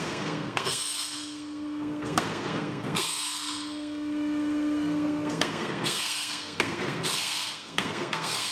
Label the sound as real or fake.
fake